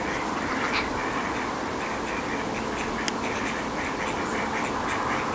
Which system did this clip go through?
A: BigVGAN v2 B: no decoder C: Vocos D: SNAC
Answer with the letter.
B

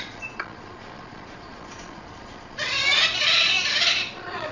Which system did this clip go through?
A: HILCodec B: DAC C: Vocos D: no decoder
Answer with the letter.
C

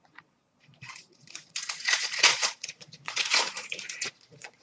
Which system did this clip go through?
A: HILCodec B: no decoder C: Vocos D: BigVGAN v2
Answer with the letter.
C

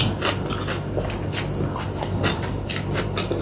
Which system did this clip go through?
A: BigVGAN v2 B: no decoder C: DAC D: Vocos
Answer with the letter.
B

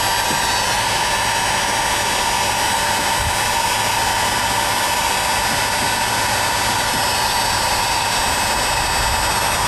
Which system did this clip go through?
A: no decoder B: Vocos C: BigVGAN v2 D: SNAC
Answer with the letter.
A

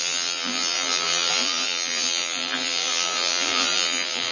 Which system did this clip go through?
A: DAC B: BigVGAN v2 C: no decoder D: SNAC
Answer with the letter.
B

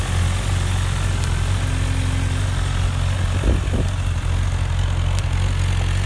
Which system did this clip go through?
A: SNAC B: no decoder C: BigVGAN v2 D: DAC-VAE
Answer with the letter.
B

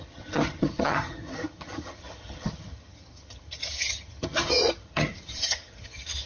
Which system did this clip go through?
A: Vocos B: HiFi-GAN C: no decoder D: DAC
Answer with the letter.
B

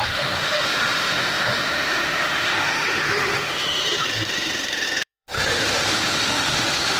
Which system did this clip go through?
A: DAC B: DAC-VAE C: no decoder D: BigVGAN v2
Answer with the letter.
B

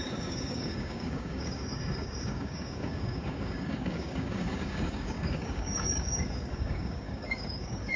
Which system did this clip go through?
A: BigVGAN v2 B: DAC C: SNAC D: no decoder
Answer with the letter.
B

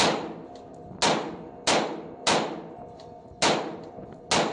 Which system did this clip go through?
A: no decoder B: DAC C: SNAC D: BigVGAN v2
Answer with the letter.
A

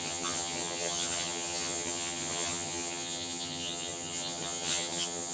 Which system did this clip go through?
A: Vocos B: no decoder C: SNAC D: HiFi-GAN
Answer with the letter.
D